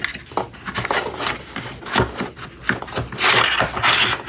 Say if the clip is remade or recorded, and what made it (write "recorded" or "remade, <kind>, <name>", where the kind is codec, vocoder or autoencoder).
recorded